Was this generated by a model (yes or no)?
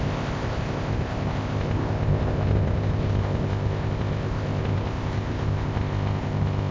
yes